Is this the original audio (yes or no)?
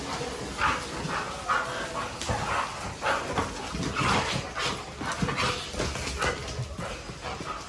yes